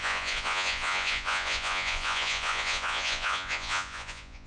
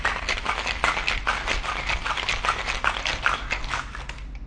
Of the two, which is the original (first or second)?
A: second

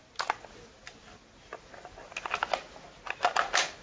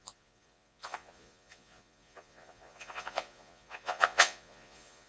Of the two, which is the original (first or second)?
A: first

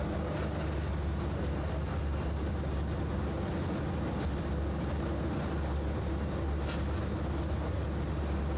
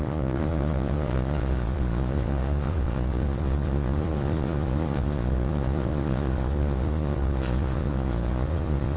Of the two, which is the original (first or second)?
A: first